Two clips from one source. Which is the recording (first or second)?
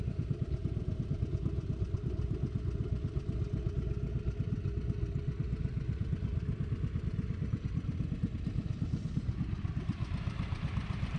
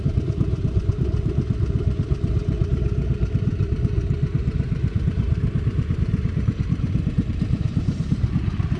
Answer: first